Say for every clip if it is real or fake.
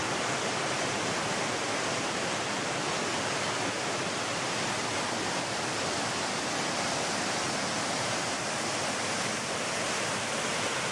real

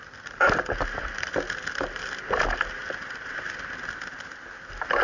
real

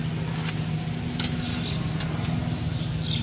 real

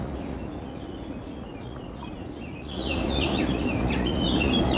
fake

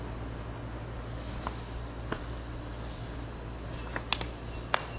real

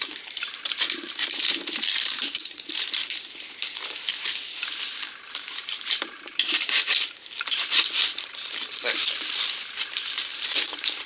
fake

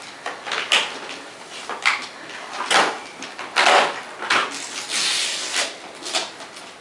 real